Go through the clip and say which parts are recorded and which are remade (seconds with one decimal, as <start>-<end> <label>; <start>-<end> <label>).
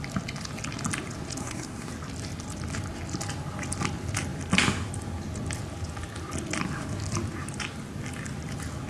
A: 0.0-1.4 recorded; 1.4-1.9 remade; 1.9-8.9 recorded